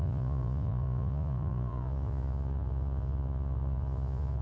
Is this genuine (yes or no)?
no